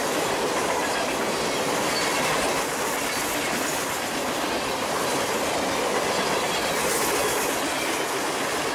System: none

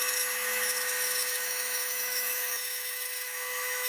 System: autoencoder, DAC-VAE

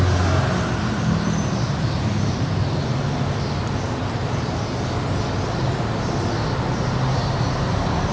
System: none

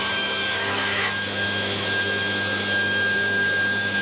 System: autoencoder, DAC-VAE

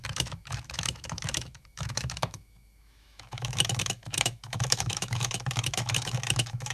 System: autoencoder, DAC-VAE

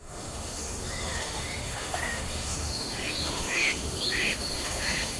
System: autoencoder, DAC-VAE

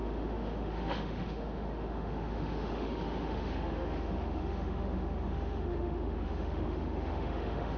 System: autoencoder, DAC-VAE